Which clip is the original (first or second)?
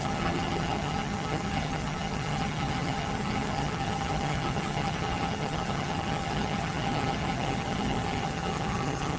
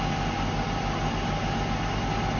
second